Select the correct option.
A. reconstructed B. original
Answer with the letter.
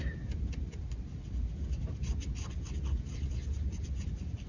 B